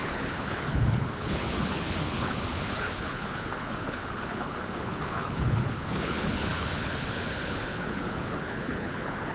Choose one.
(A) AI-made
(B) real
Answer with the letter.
A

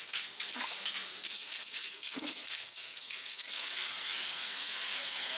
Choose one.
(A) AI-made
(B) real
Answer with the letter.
A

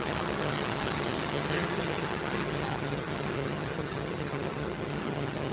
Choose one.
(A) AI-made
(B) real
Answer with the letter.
A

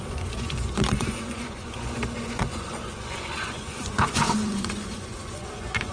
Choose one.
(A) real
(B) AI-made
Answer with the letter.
B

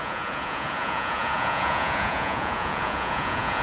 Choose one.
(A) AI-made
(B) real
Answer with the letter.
A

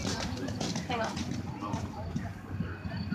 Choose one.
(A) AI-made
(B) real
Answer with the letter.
B